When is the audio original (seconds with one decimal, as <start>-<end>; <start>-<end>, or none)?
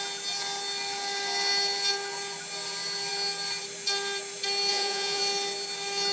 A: 0.0-4.7; 5.2-6.1